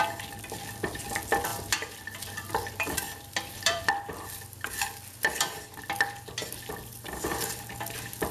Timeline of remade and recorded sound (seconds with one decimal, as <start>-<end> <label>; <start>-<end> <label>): 0.0-1.5 recorded; 1.5-3.8 remade; 3.8-8.3 recorded